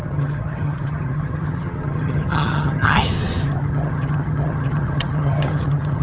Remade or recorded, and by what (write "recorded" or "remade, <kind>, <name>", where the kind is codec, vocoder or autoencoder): remade, vocoder, HiFi-GAN